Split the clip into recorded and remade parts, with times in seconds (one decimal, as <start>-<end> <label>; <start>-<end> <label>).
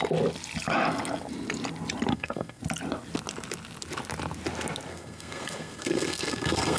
0.0-2.1 recorded; 2.1-2.6 remade; 2.6-4.9 recorded; 4.9-6.8 remade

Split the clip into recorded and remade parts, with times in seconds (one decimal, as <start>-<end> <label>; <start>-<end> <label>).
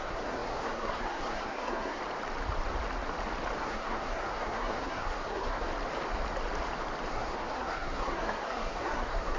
0.0-2.0 remade; 2.0-3.6 recorded; 3.6-5.7 remade; 5.7-7.1 recorded; 7.1-9.4 remade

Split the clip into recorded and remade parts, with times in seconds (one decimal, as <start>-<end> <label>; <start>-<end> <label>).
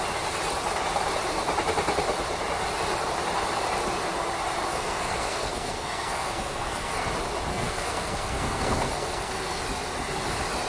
0.0-4.7 recorded; 4.7-7.1 remade; 7.1-7.5 recorded; 7.5-9.6 remade; 9.6-10.7 recorded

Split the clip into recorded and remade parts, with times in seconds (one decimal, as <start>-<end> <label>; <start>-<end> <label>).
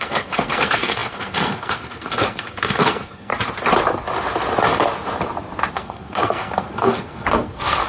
0.0-3.3 remade; 3.3-5.7 recorded; 5.7-7.9 remade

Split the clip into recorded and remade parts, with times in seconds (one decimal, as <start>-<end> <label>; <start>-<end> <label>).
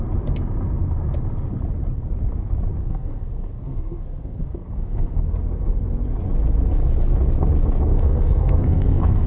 0.0-2.8 recorded; 2.8-5.2 remade; 5.2-7.9 recorded; 7.9-9.3 remade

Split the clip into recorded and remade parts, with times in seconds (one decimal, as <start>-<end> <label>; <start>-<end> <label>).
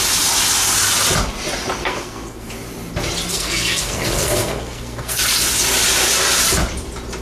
0.0-1.8 recorded; 1.8-2.5 remade; 2.5-3.3 recorded; 3.3-5.2 remade; 5.2-7.2 recorded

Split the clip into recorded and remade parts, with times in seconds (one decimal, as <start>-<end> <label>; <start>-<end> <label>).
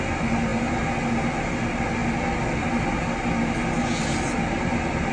0.0-5.1 recorded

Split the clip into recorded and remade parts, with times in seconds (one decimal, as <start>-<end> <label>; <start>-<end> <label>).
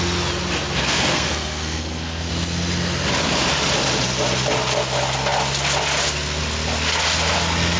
0.0-0.8 recorded; 0.8-2.3 remade; 2.3-7.8 recorded